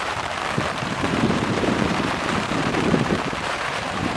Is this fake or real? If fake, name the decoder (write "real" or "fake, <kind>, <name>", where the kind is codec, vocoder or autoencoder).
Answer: fake, vocoder, BigVGAN v2